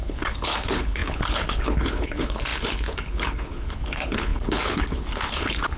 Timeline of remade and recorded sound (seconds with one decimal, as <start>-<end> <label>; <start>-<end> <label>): 0.0-5.8 remade